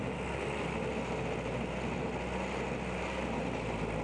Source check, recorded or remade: recorded